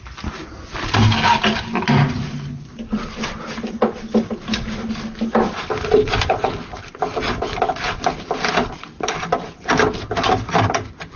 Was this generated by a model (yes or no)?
no